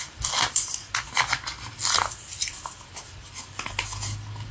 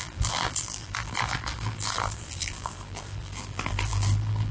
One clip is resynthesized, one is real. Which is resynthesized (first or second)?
second